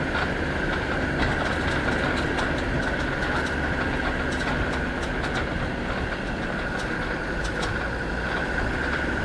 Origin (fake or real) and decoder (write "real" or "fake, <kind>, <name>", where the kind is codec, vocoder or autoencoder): real